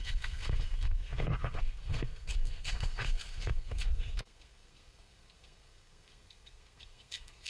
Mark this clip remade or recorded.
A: remade